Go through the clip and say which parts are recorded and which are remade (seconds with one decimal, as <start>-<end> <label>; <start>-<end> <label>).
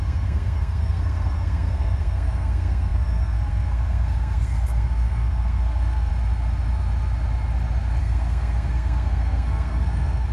0.0-6.1 remade; 6.1-8.0 recorded; 8.0-10.3 remade